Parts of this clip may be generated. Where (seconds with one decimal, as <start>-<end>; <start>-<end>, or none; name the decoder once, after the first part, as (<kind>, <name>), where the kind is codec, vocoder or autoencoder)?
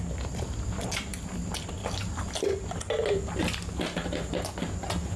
none